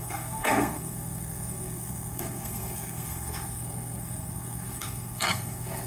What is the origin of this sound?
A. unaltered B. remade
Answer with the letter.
B